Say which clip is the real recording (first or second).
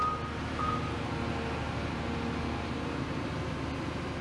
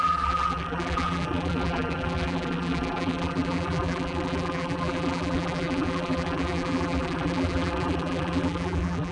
first